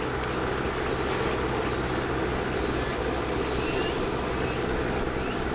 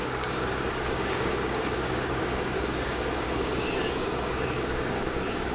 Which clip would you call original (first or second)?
first